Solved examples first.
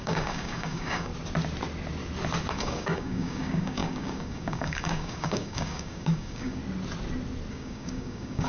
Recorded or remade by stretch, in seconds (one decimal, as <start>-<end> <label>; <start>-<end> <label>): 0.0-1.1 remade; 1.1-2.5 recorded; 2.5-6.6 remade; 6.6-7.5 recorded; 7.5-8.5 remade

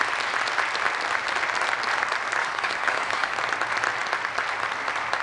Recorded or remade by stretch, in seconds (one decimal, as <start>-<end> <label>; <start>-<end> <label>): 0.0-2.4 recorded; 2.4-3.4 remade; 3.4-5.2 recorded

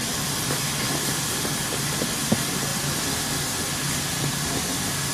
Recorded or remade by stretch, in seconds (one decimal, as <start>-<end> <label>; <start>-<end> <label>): 0.0-5.1 recorded